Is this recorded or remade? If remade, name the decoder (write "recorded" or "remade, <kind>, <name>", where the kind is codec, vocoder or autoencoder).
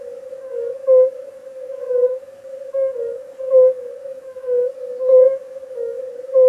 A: remade, codec, DAC